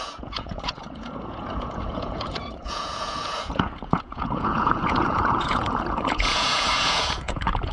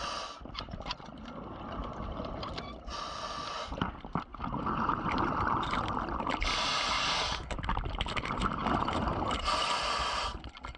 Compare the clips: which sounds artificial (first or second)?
first